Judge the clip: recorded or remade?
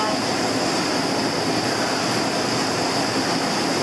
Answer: recorded